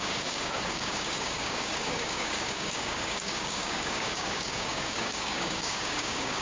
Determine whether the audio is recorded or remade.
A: remade